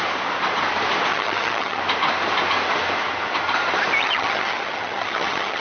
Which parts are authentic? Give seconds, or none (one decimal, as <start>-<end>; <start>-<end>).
0.0-1.1; 1.8-4.0